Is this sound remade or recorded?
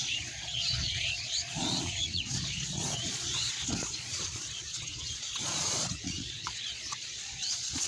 remade